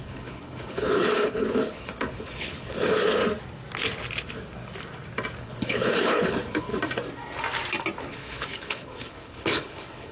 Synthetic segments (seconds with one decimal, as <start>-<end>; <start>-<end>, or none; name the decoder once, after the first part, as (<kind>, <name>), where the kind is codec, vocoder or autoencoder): 0.0-3.2 (codec, HILCodec); 5.4-6.7; 8.1-10.1